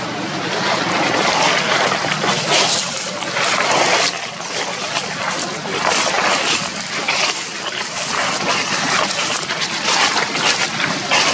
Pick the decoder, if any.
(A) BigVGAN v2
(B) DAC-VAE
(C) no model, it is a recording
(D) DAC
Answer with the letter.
C